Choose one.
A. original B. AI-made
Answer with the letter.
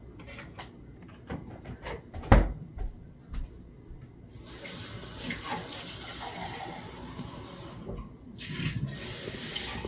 A